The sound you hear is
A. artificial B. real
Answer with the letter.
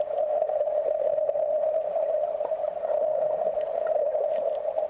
B